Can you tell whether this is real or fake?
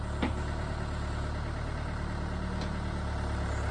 real